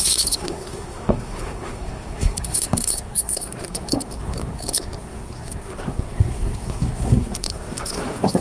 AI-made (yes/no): yes